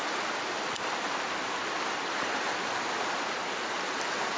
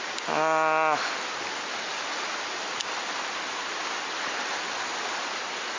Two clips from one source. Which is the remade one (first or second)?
first